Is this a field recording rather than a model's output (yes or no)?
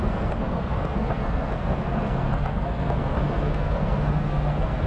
no